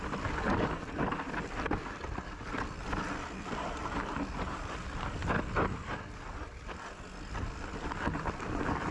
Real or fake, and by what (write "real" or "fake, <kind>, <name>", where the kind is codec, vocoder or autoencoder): real